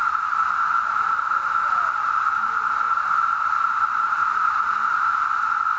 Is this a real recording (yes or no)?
yes